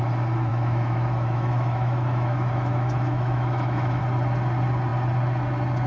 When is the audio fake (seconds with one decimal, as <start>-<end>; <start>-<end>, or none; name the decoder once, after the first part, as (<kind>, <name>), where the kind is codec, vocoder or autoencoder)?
0.5-4.0 (autoencoder, DAC-VAE)